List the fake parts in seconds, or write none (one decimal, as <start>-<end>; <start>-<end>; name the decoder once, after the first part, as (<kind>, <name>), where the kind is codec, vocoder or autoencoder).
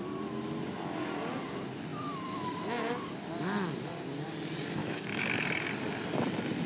4.8-5.4 (autoencoder, DAC-VAE)